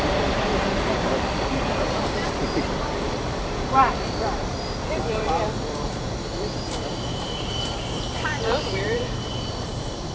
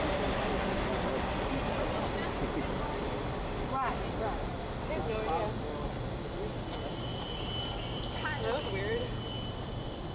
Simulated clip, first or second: first